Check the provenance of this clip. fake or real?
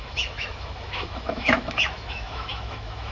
fake